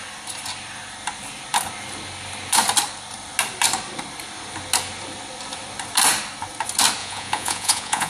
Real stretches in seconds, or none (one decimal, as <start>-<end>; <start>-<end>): 0.0-7.0